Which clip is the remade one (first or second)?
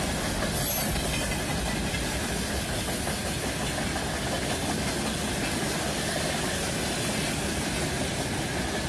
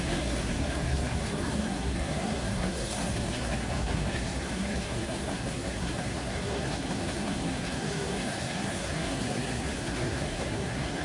second